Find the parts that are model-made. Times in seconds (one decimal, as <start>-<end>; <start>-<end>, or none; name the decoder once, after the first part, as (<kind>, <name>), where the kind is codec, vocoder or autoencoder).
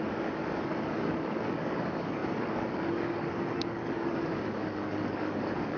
0.0-5.8 (codec, DAC)